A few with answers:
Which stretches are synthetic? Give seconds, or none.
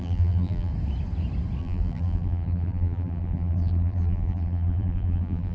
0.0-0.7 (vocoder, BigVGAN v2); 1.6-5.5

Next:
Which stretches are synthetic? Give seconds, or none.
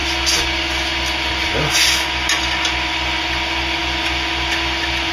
none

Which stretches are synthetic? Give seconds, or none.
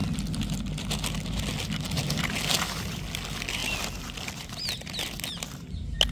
none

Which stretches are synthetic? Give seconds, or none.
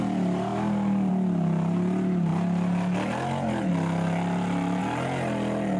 none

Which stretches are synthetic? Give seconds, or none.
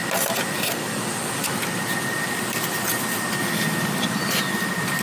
none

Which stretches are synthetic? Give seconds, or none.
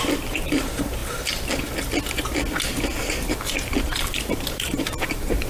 0.0-1.0 (vocoder, BigVGAN v2); 3.3-5.5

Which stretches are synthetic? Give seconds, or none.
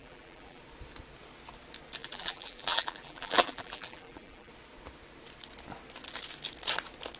0.0-0.6 (vocoder, BigVGAN v2); 2.0-4.5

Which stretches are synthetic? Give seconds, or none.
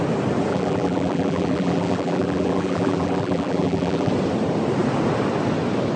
0.5-4.1 (vocoder, BigVGAN v2)